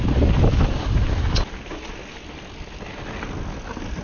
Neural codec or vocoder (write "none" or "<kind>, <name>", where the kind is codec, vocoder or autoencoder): none